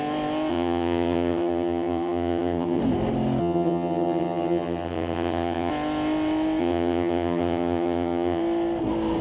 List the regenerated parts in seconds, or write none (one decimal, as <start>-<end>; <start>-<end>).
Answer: 0.5-2.8; 3.4-5.7; 6.6-8.4